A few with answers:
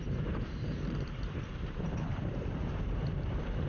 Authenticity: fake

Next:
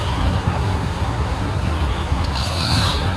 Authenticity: fake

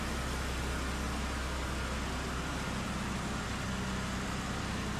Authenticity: real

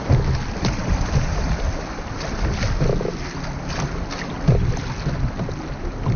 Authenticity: real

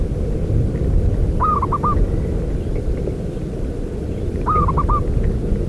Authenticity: real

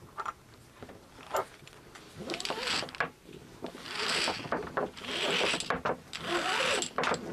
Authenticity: real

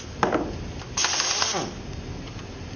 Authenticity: real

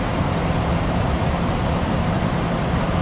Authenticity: fake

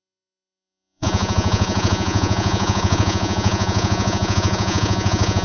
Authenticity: fake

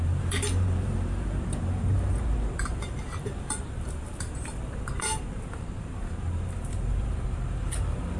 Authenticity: fake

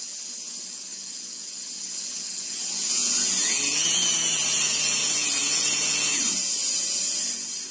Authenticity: fake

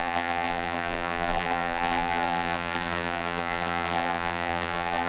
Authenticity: fake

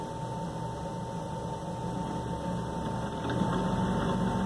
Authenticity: real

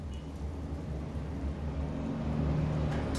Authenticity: real